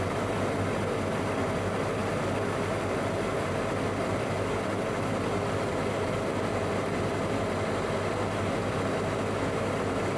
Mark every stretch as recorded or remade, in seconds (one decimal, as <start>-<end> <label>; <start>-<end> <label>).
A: 0.0-10.2 recorded